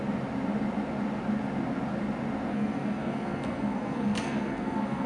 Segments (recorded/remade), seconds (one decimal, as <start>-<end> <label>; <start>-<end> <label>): 0.0-2.5 recorded; 2.5-5.1 remade